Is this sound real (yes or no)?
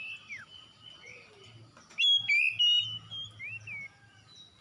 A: yes